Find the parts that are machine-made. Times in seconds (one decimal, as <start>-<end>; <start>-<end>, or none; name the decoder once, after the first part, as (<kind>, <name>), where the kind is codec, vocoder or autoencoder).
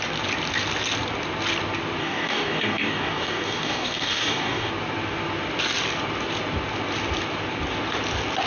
2.0-4.7 (codec, DAC)